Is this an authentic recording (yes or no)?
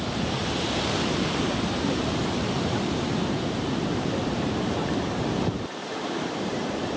no